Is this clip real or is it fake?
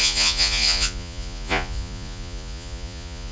fake